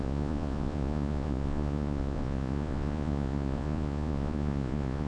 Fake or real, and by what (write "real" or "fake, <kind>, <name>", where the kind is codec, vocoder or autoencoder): fake, vocoder, Vocos